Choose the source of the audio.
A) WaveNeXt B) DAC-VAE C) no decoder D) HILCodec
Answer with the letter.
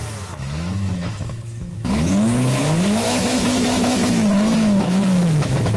B